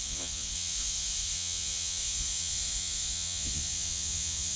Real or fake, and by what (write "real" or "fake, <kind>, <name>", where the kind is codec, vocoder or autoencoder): fake, vocoder, Vocos